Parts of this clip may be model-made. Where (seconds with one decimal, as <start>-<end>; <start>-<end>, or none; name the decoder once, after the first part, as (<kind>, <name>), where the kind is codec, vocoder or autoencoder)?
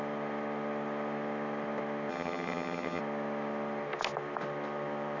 2.1-3.0 (vocoder, HiFi-GAN)